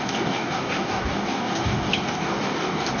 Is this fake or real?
fake